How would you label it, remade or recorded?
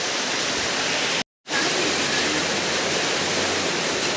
recorded